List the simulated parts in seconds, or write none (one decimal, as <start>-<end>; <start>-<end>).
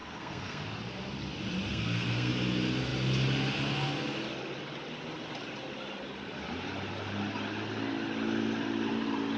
0.0-0.6; 1.7-2.3